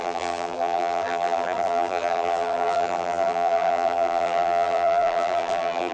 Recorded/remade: remade